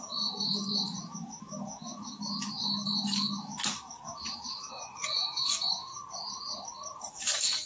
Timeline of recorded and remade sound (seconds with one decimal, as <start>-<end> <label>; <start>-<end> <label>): 0.0-5.9 remade; 5.9-7.1 recorded; 7.1-7.7 remade